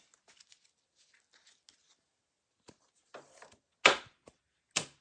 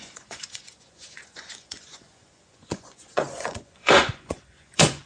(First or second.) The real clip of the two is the first